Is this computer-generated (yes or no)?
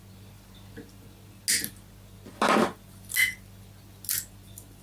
no